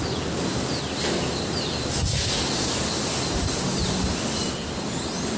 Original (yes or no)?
yes